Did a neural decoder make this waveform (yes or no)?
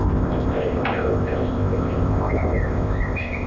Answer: yes